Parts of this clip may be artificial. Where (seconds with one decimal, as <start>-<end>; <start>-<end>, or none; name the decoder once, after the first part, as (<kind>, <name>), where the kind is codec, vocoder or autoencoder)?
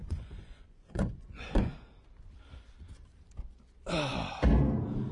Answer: 0.0-1.7 (vocoder, Vocos)